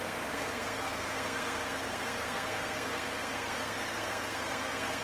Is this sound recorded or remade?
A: remade